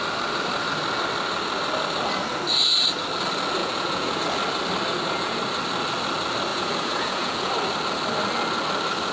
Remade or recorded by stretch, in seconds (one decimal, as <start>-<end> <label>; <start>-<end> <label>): 0.0-3.6 recorded; 3.6-4.2 remade; 4.2-4.9 recorded; 4.9-5.4 remade; 5.4-6.5 recorded; 6.5-7.5 remade; 7.5-9.1 recorded